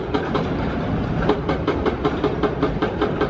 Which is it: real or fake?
fake